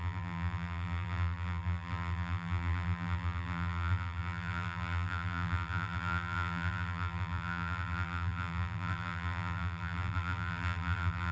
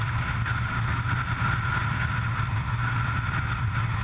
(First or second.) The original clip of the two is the second